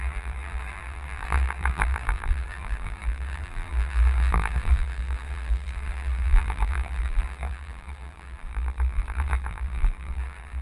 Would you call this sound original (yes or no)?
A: no